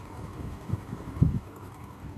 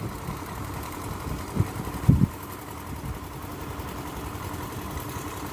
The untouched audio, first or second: second